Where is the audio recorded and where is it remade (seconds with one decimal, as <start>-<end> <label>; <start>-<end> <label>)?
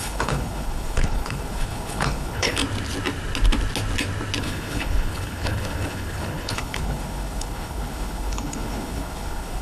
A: 0.0-2.6 remade; 2.6-4.4 recorded; 4.4-9.6 remade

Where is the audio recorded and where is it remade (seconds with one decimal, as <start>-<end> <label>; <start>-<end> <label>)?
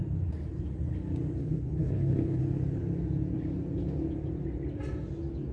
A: 0.0-1.4 recorded; 1.4-2.4 remade; 2.4-5.5 recorded